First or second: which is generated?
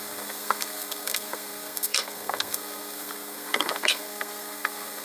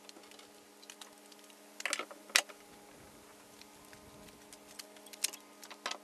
first